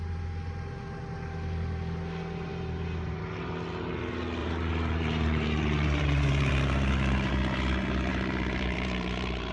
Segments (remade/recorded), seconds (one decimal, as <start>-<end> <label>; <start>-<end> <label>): 0.0-2.5 recorded; 2.5-3.2 remade; 3.2-4.4 recorded; 4.4-7.3 remade; 7.3-8.1 recorded; 8.1-9.5 remade